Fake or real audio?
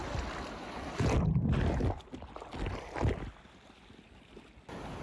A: real